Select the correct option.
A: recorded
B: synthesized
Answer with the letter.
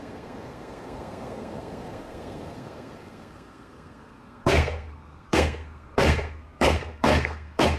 B